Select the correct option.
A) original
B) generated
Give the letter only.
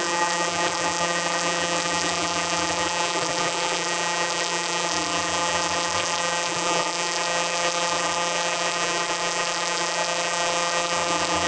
B